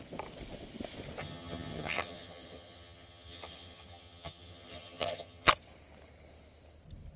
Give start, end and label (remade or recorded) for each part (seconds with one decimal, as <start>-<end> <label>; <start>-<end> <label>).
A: 0.0-1.2 recorded; 1.2-5.5 remade; 5.5-7.2 recorded